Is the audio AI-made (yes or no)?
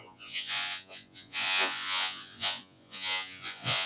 yes